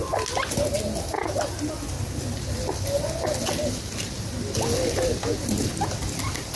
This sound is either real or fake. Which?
real